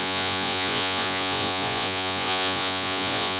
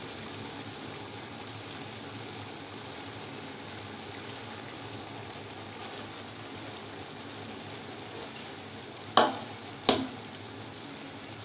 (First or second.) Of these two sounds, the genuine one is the second